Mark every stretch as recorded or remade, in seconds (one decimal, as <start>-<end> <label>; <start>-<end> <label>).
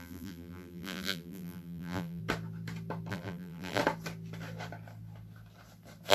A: 0.0-2.2 remade; 2.2-3.1 recorded; 3.1-3.8 remade; 3.8-6.1 recorded